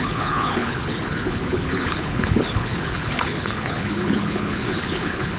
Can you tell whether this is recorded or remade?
remade